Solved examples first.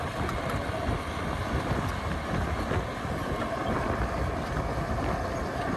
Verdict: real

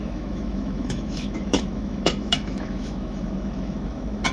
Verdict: fake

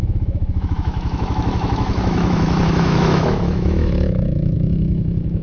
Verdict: fake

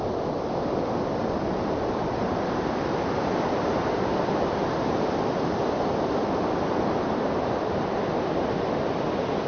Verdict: fake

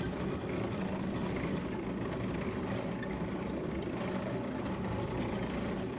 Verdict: real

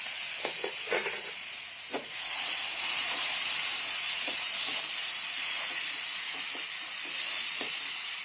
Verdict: fake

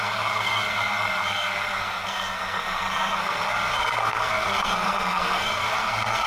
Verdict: fake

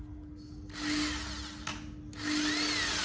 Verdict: real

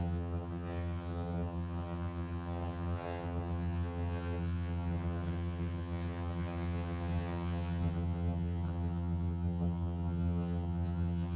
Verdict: fake